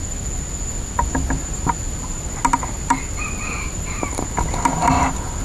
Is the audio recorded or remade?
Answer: recorded